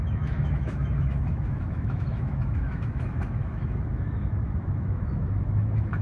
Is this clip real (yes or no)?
no